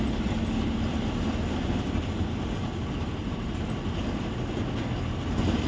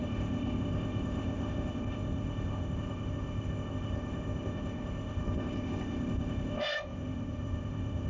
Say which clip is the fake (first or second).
second